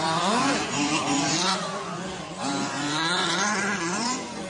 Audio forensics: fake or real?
fake